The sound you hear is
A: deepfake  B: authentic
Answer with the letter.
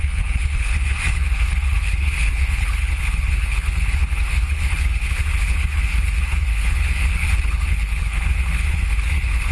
A